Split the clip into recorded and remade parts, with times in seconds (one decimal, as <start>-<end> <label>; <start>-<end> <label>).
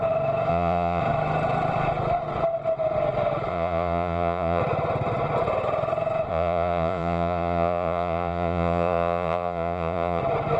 0.0-0.5 recorded; 0.5-1.0 remade; 1.0-3.5 recorded; 3.5-4.6 remade; 4.6-6.3 recorded; 6.3-10.2 remade; 10.2-10.6 recorded